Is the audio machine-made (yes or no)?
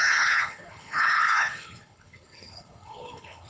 yes